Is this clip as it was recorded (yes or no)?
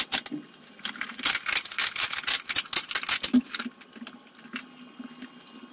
yes